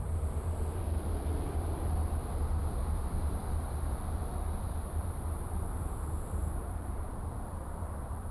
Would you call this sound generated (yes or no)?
yes